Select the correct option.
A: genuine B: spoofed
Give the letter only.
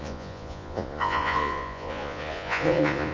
B